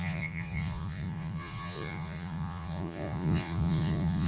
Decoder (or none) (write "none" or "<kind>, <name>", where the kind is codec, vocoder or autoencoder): vocoder, Vocos